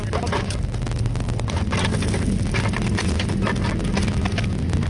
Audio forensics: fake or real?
real